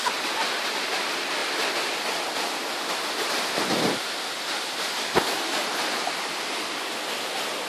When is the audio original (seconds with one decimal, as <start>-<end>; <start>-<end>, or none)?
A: 0.0-7.7